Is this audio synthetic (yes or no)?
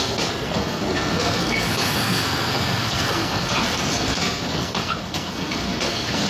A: yes